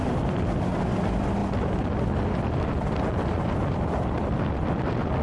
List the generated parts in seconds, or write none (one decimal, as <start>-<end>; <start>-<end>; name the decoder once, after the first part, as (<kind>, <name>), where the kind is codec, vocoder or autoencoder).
none